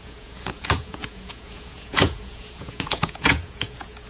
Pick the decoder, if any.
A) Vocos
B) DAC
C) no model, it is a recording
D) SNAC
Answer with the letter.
A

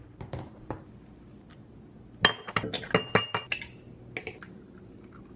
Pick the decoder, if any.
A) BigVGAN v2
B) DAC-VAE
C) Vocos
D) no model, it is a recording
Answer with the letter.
D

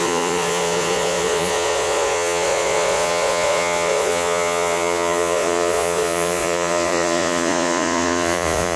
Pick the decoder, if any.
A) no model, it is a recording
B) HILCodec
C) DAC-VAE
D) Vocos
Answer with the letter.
D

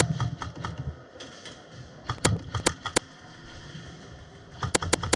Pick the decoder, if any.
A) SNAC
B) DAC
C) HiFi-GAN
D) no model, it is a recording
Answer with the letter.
D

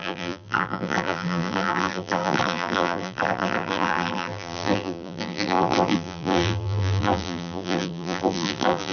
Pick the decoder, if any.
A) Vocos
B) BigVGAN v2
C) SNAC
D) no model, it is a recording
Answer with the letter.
B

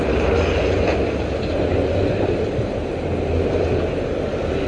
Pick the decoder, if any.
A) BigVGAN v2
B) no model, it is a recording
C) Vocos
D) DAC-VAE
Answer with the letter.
B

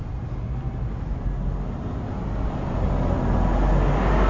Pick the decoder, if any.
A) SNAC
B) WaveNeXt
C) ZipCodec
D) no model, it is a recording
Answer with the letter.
D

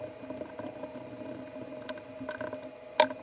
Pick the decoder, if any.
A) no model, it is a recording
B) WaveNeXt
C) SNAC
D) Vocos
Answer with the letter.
A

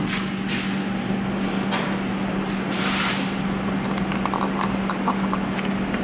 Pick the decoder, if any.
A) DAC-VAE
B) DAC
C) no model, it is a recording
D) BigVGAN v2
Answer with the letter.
C